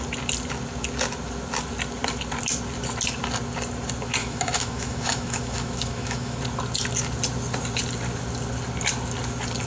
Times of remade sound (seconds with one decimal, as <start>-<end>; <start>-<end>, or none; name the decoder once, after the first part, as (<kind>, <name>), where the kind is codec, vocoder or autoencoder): 4.2-6.4 (autoencoder, DAC-VAE)